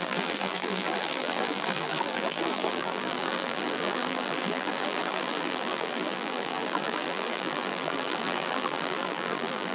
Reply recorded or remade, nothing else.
remade